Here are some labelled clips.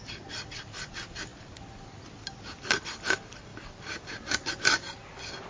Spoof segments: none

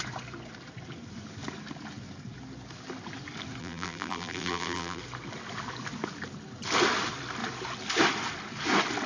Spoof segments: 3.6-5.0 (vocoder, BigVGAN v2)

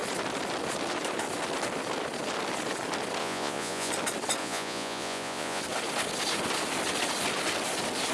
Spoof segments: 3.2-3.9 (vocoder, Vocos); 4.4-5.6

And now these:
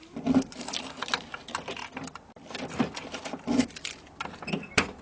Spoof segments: none